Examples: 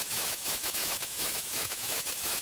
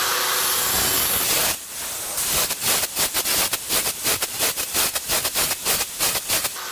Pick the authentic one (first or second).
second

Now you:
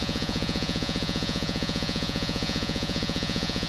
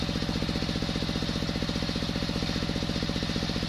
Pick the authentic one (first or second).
second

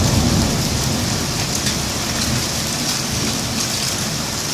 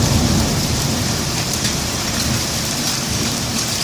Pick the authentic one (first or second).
first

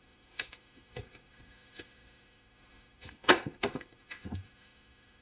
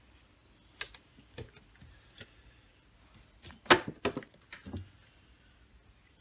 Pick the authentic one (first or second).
second